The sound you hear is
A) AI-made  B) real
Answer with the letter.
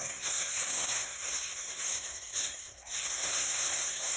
A